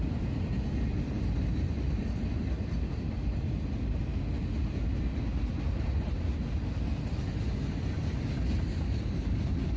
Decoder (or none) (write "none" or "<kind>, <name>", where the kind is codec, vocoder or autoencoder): none